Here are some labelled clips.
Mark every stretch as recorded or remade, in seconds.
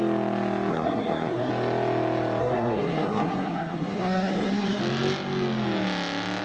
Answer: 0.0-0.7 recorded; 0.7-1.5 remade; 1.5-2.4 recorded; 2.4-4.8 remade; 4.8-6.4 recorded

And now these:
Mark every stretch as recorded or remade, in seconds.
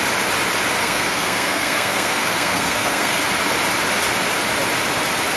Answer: 0.0-0.8 recorded; 0.8-3.2 remade; 3.2-5.4 recorded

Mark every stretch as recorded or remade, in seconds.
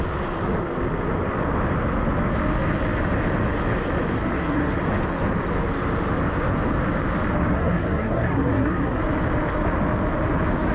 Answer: 0.0-4.1 recorded; 4.1-4.8 remade; 4.8-7.5 recorded; 7.5-9.0 remade; 9.0-10.7 recorded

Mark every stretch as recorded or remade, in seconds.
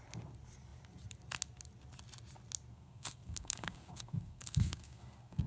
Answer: 0.0-2.7 recorded; 2.7-5.5 remade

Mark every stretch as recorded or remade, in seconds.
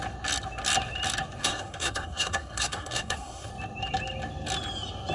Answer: 0.0-1.4 recorded; 1.4-3.5 remade; 3.5-5.1 recorded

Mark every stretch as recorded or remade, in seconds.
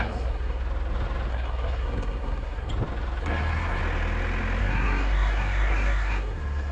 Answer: 0.0-0.6 remade; 0.6-1.3 recorded; 1.3-2.7 remade; 2.7-3.2 recorded; 3.2-3.8 remade; 3.8-4.6 recorded; 4.6-6.7 remade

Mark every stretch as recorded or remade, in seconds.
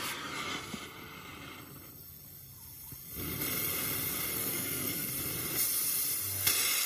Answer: 0.0-4.4 recorded; 4.4-5.1 remade; 5.1-6.9 recorded